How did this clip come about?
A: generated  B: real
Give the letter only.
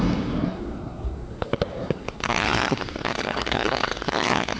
A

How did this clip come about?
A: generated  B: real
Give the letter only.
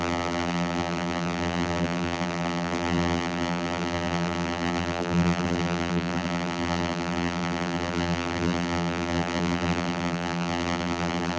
A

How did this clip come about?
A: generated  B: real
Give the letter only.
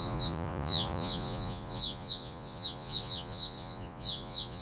A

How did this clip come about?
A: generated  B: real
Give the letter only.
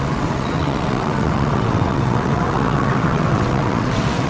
A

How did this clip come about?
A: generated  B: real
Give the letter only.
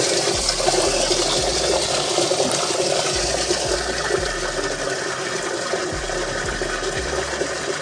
B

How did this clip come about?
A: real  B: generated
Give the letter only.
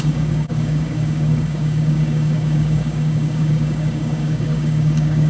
B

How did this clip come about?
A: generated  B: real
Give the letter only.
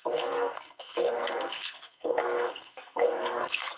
A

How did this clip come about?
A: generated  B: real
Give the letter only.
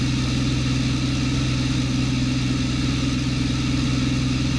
B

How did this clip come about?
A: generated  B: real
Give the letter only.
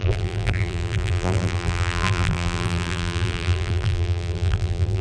A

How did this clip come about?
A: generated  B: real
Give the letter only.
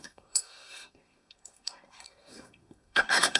A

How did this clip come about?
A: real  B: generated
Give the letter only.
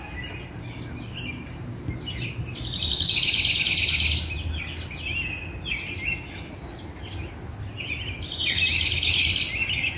A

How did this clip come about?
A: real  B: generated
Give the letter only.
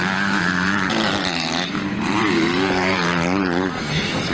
B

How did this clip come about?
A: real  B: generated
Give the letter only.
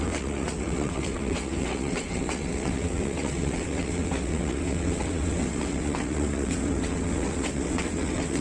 B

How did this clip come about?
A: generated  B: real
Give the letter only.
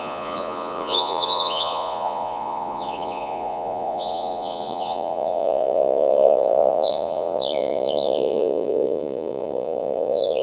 A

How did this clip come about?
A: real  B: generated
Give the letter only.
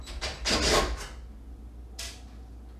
A